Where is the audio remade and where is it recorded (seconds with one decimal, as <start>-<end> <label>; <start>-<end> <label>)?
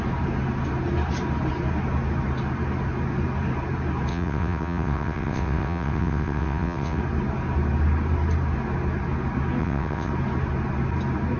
0.0-4.1 recorded; 4.1-7.0 remade; 7.0-9.6 recorded; 9.6-10.1 remade; 10.1-11.4 recorded